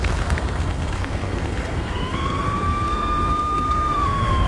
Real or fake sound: fake